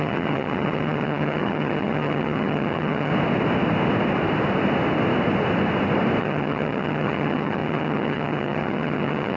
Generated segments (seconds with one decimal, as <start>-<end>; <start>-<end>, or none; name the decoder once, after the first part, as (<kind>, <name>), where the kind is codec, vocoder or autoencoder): 0.0-3.1 (vocoder, HiFi-GAN); 6.2-9.4

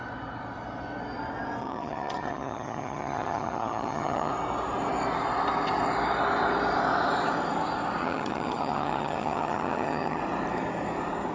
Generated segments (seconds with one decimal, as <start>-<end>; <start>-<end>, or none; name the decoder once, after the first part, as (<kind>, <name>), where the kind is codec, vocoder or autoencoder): 1.6-4.3 (vocoder, HiFi-GAN); 8.0-10.2

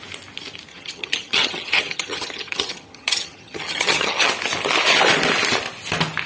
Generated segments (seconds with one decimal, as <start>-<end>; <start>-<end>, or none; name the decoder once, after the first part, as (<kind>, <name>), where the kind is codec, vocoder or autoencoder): 0.7-4.3 (vocoder, HiFi-GAN)

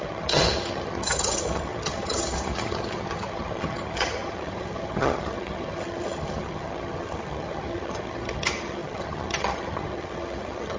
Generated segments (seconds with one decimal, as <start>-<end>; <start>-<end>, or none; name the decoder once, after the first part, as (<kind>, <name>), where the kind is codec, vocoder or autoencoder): 0.0-10.8 (vocoder, HiFi-GAN)

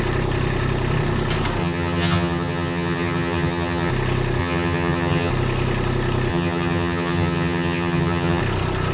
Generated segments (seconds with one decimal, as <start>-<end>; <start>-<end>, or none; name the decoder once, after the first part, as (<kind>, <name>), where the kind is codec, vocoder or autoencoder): 1.6-3.9 (vocoder, HiFi-GAN); 4.4-5.3; 6.3-8.4

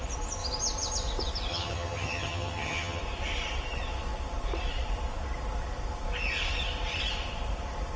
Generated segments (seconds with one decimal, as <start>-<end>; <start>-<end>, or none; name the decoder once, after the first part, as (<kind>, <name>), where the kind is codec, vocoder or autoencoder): 1.5-3.0 (vocoder, HiFi-GAN)

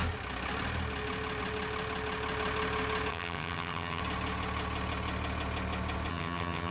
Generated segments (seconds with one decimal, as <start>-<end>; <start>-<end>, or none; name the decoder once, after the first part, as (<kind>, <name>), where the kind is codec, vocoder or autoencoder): 3.1-4.0 (vocoder, HiFi-GAN); 6.1-6.7

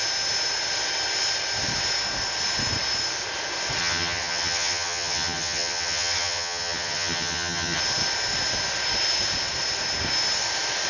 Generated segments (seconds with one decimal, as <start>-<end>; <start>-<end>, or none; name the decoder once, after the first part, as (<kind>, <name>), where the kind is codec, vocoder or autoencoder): 3.8-7.8 (vocoder, HiFi-GAN)